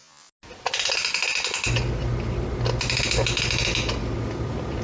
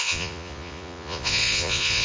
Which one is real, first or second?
first